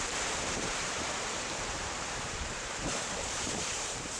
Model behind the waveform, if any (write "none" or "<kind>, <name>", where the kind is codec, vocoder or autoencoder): vocoder, BigVGAN v2